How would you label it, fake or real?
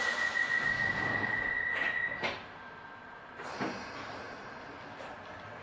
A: real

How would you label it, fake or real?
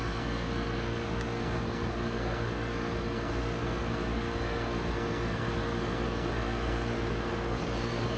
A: fake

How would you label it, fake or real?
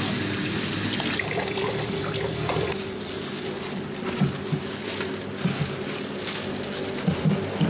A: real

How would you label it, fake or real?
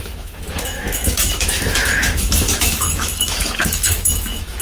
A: fake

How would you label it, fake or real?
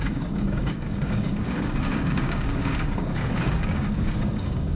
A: fake